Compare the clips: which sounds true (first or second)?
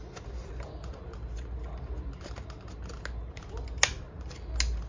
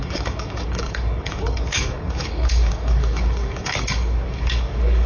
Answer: first